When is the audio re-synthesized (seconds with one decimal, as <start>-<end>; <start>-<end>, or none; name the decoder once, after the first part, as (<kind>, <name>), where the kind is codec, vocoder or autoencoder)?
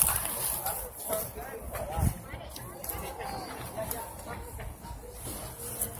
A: none